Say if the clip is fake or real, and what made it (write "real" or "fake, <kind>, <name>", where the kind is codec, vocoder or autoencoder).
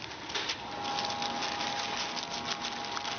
real